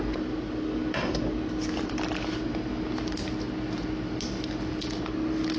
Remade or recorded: recorded